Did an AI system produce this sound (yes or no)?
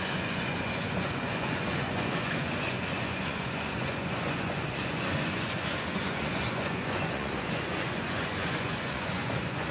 yes